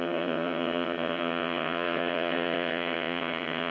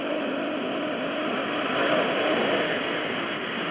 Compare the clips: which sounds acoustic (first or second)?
second